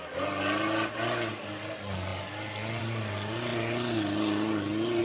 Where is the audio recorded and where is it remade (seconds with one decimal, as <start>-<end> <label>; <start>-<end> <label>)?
0.0-5.0 recorded